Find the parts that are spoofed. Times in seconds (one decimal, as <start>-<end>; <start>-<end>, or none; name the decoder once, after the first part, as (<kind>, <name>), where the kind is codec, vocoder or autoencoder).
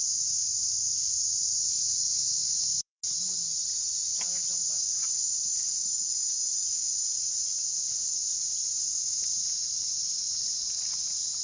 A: 0.4-1.0 (vocoder, BigVGAN v2); 2.4-3.0; 4.1-5.9; 8.2-10.3